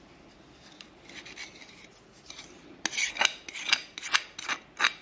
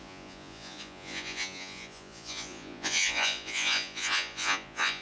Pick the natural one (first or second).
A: first